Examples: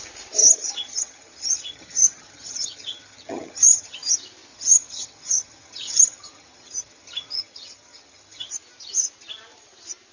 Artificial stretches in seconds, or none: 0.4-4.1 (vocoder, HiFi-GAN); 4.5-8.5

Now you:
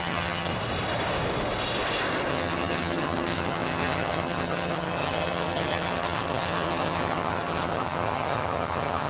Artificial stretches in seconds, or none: 0.0-0.5 (vocoder, HiFi-GAN); 2.3-9.1

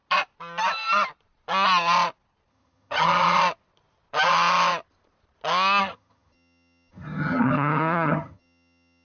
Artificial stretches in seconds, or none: 2.5-3.4 (vocoder, HiFi-GAN); 5.8-9.0

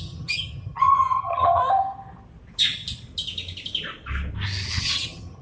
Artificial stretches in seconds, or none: 0.0-1.6 (vocoder, HiFi-GAN); 4.8-5.4

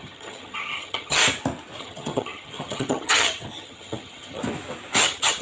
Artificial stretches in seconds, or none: 0.0-1.2 (vocoder, HiFi-GAN); 1.8-4.4; 5.0-5.4

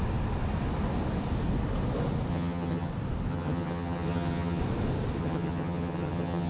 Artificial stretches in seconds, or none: 2.3-2.9 (vocoder, HiFi-GAN); 3.3-4.6; 5.2-6.5

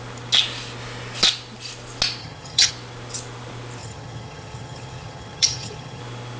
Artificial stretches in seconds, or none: 2.2-2.7 (vocoder, HiFi-GAN); 3.8-6.0

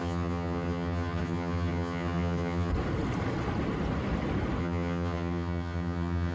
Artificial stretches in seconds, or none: 0.0-2.7 (vocoder, HiFi-GAN); 4.6-6.3